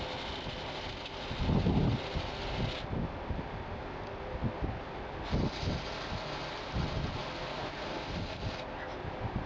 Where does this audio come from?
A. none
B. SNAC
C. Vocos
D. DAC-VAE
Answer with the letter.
A